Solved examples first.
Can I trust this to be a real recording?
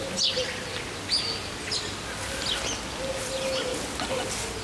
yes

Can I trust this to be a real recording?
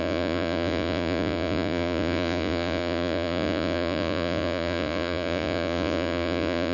no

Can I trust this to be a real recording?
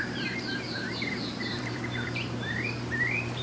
no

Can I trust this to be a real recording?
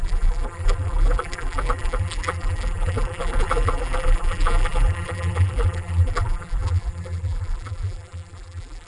no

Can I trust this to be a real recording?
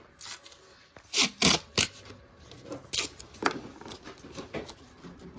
yes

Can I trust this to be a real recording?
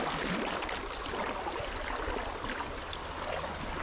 yes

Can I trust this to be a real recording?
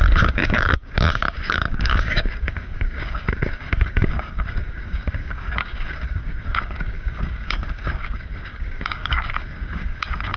no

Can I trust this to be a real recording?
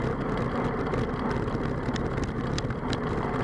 yes